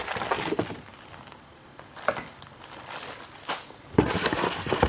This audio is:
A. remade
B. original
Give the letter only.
B